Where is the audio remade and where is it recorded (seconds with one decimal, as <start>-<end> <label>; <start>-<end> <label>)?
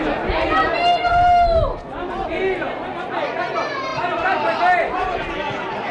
0.0-5.9 recorded